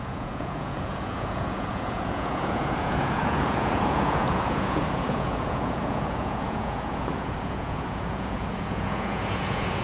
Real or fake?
fake